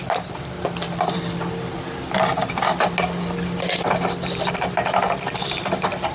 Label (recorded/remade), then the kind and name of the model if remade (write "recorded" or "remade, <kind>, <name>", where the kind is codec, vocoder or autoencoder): recorded